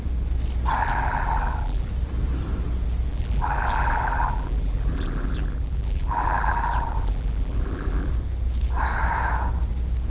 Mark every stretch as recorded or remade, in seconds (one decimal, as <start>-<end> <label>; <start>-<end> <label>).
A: 0.0-0.8 recorded; 0.8-1.9 remade; 1.9-3.1 recorded; 3.1-8.1 remade; 8.1-10.1 recorded